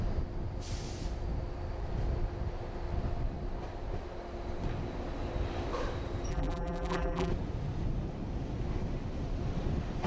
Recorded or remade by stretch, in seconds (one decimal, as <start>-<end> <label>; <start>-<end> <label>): 0.0-6.3 recorded; 6.3-7.3 remade; 7.3-10.1 recorded